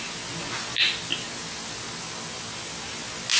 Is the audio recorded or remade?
recorded